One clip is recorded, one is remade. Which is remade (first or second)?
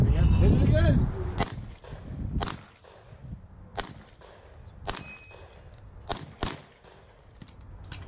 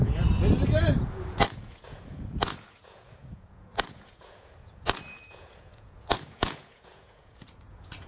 second